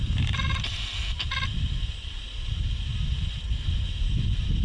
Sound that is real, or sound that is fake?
real